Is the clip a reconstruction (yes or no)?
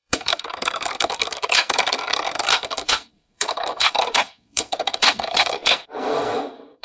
yes